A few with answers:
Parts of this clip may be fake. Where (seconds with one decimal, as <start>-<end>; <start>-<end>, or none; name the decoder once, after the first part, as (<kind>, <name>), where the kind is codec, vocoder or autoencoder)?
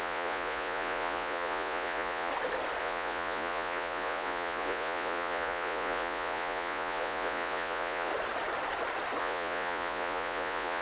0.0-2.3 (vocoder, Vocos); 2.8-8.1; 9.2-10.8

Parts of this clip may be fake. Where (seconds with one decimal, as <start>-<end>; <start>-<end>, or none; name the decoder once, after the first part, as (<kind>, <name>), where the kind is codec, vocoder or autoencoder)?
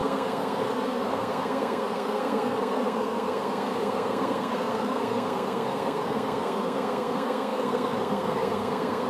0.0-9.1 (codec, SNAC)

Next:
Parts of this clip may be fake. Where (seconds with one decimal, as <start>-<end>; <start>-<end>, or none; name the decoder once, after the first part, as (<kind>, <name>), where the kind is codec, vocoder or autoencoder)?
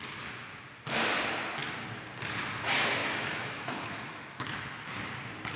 3.0-5.0 (autoencoder, DAC-VAE)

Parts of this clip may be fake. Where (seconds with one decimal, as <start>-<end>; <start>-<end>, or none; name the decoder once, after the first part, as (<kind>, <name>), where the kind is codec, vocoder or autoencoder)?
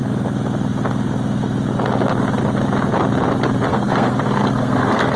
3.7-5.2 (codec, SNAC)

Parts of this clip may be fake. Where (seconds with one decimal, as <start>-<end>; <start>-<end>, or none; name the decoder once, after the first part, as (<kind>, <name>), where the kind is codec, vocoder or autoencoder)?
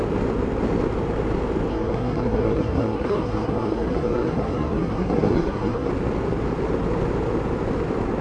1.7-5.9 (codec, SNAC)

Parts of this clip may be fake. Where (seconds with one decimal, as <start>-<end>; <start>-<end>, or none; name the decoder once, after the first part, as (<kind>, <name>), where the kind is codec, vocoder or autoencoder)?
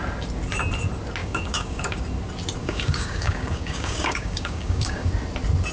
1.2-2.0 (codec, DAC); 2.6-5.1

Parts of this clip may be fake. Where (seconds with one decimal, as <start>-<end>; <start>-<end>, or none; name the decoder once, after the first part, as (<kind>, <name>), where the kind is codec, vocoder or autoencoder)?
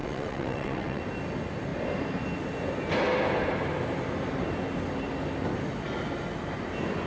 0.0-1.0 (vocoder, WaveNeXt)